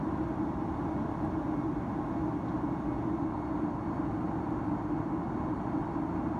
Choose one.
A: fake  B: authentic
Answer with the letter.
B